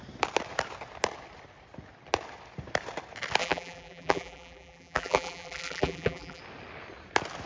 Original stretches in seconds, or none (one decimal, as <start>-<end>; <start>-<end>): 0.0-3.4; 6.4-7.5